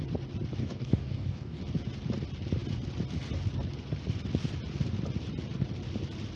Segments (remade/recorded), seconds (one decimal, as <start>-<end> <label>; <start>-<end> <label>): 0.0-0.6 recorded; 0.6-1.6 remade; 1.6-6.4 recorded